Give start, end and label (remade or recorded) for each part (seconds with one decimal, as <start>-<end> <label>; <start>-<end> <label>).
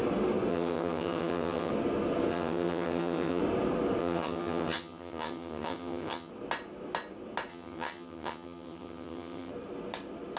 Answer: 0.0-0.5 recorded; 0.5-1.7 remade; 1.7-2.3 recorded; 2.3-3.4 remade; 3.4-4.0 recorded; 4.0-6.3 remade; 6.3-7.5 recorded; 7.5-9.5 remade; 9.5-10.4 recorded